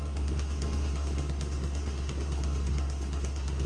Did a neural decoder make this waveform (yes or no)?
yes